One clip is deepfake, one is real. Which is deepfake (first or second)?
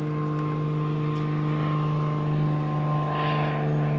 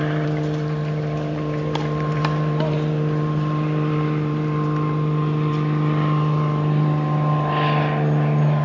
second